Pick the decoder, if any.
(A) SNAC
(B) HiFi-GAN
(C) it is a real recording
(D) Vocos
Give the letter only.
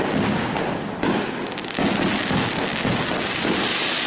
C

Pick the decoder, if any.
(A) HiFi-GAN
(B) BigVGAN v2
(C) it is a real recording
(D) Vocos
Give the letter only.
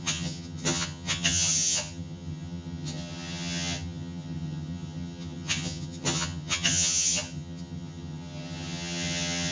A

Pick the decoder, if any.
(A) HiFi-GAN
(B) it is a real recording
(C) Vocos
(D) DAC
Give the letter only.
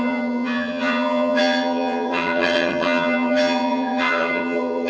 A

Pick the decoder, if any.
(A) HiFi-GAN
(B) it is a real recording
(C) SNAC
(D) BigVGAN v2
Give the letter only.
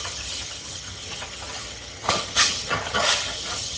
A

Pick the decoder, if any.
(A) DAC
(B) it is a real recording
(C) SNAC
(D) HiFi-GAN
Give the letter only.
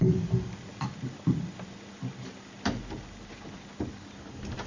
B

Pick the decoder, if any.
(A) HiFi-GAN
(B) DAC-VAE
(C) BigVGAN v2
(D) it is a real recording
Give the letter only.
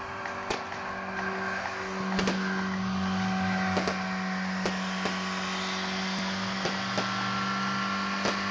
D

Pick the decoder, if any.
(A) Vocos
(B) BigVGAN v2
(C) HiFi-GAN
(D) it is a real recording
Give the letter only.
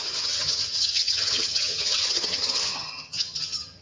C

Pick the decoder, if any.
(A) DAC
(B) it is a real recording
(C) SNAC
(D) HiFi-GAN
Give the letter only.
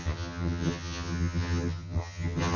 D